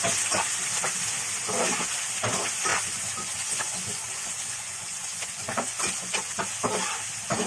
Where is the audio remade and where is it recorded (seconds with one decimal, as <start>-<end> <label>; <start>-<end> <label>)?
0.0-2.7 recorded; 2.7-6.4 remade; 6.4-7.5 recorded